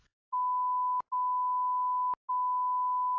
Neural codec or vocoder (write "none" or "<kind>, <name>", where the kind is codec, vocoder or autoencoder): none